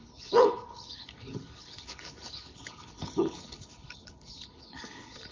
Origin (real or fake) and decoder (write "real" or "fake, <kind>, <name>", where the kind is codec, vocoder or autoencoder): fake, codec, HILCodec